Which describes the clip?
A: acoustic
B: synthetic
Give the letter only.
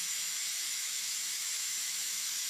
B